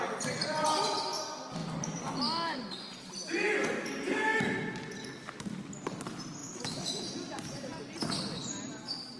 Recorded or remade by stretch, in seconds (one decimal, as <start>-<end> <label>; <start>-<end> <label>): 0.0-6.4 recorded; 6.4-7.0 remade; 7.0-9.2 recorded